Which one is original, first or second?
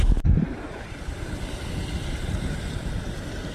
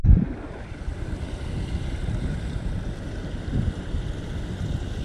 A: first